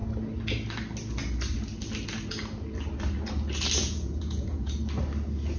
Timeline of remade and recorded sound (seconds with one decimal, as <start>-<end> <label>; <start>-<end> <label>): 0.0-3.8 recorded; 3.8-4.7 remade; 4.7-5.6 recorded